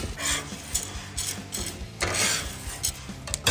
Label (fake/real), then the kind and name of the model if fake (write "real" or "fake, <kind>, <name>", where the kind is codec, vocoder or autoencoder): real